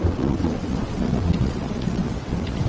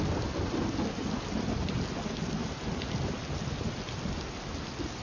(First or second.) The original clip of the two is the second